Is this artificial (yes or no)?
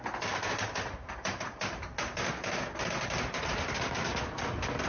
no